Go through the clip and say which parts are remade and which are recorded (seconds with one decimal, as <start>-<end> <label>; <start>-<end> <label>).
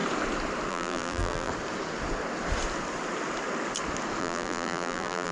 0.0-0.7 recorded; 0.7-1.5 remade; 1.5-4.2 recorded; 4.2-5.3 remade